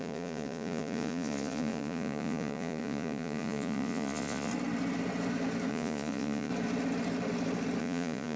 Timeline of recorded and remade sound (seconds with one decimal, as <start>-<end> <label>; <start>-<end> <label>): 0.0-4.5 remade; 4.5-5.7 recorded; 5.7-6.5 remade; 6.5-7.8 recorded; 7.8-8.4 remade